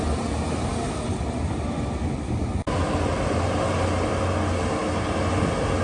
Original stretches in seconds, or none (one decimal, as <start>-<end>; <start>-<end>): 0.0-5.8